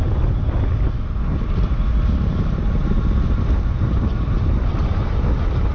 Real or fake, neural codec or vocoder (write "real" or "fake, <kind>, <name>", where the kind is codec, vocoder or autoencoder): real